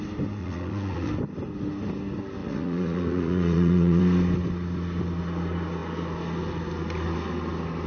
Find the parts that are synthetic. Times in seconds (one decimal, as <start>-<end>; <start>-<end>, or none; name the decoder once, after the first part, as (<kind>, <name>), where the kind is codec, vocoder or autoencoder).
0.4-1.1 (vocoder, Vocos); 2.4-4.0

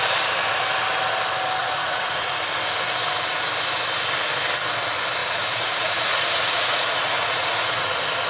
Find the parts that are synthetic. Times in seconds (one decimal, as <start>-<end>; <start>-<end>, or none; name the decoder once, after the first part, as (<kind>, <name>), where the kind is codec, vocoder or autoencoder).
1.6-2.4 (vocoder, Vocos); 5.2-7.9